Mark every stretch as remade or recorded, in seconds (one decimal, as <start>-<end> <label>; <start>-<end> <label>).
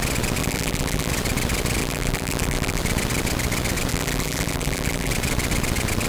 0.0-0.4 recorded; 0.4-1.1 remade; 1.1-1.8 recorded; 1.8-2.8 remade; 2.8-3.9 recorded; 3.9-5.1 remade; 5.1-6.1 recorded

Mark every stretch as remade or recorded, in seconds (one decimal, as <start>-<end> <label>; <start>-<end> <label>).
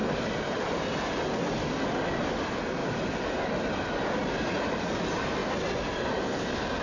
0.0-1.1 remade; 1.1-2.8 recorded; 2.8-3.5 remade; 3.5-6.8 recorded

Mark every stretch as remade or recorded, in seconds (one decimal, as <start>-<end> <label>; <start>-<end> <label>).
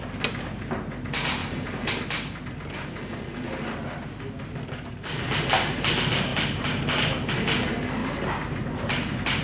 0.0-1.4 recorded; 1.4-1.9 remade; 1.9-8.0 recorded; 8.0-8.7 remade; 8.7-9.4 recorded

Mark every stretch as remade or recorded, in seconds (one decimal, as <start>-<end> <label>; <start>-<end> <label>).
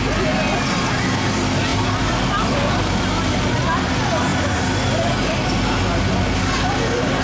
0.0-1.7 recorded; 1.7-3.6 remade; 3.6-7.2 recorded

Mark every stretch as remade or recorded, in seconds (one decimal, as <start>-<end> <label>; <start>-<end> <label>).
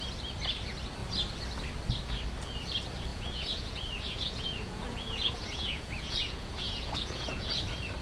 0.0-3.1 recorded; 3.1-7.5 remade; 7.5-8.0 recorded